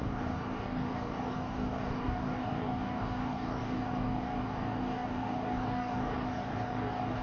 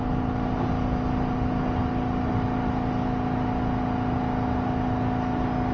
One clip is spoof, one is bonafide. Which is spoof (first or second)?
first